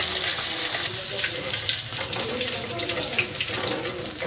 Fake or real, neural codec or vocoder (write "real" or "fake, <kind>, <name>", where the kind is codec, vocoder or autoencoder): real